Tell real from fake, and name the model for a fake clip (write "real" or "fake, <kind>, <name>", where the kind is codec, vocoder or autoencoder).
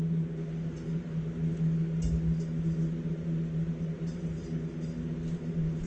real